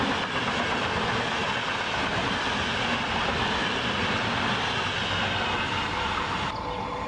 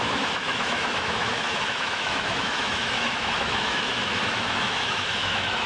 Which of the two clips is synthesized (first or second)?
second